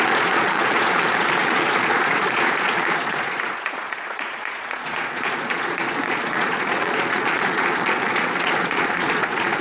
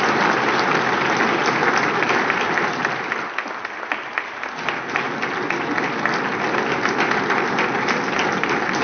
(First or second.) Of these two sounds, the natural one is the second